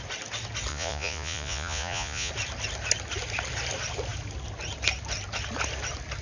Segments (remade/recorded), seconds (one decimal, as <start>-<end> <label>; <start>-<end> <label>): 0.0-0.7 recorded; 0.7-2.3 remade; 2.3-6.2 recorded